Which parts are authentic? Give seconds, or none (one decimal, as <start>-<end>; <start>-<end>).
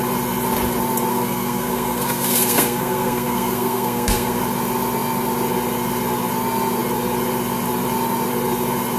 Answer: 0.0-1.1; 4.4-9.0